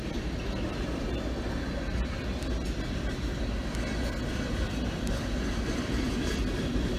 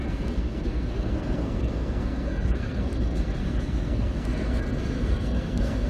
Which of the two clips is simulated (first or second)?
second